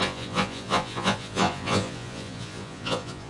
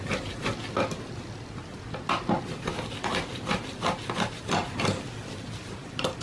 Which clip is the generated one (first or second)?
first